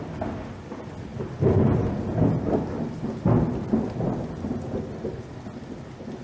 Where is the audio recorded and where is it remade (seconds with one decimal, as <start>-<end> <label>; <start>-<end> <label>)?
0.0-6.2 recorded